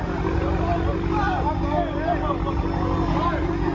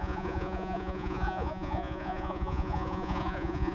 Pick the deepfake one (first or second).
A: second